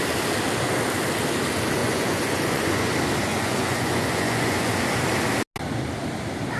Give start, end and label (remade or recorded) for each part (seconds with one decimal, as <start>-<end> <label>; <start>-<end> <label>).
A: 0.0-1.8 recorded; 1.8-2.9 remade; 2.9-3.3 recorded; 3.3-4.7 remade; 4.7-6.6 recorded